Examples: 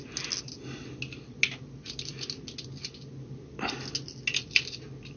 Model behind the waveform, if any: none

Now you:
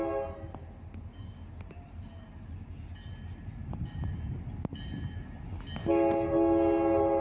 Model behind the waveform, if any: none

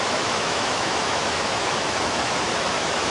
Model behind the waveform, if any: autoencoder, DAC-VAE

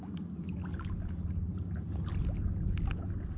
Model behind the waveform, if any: none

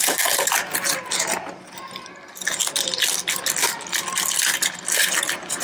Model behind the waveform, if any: none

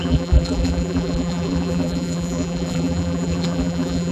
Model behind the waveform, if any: vocoder, BigVGAN v2